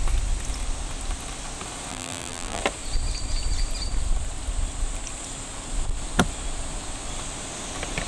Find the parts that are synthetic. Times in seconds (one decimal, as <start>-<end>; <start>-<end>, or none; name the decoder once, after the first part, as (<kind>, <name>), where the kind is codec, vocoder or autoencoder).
1.9-2.6 (vocoder, BigVGAN v2)